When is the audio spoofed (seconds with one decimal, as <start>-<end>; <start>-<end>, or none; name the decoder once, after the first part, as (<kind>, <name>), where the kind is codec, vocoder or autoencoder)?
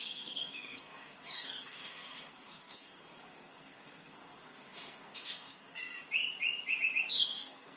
0.0-5.9 (codec, SNAC); 7.1-7.8